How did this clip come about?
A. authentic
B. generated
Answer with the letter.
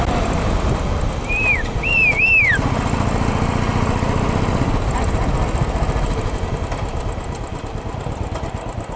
A